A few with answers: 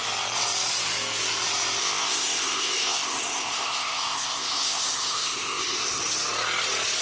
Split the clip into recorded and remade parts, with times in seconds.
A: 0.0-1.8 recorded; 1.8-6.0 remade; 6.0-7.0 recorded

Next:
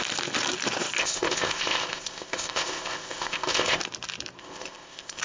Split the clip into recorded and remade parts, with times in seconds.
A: 0.0-1.0 recorded; 1.0-3.8 remade; 3.8-4.4 recorded; 4.4-5.2 remade